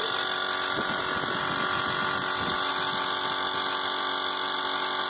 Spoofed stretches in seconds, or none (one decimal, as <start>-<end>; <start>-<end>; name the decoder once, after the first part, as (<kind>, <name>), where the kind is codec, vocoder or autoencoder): none